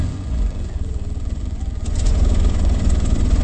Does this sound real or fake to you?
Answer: fake